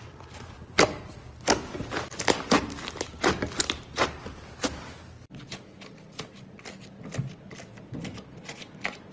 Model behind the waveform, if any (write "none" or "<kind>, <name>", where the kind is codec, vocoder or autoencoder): none